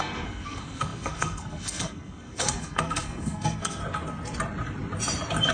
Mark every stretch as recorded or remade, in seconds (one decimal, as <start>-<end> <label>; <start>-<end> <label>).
0.0-3.8 remade; 3.8-5.5 recorded